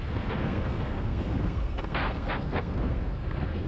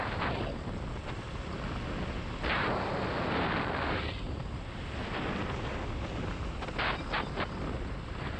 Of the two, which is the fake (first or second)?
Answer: first